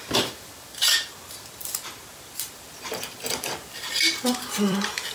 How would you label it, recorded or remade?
remade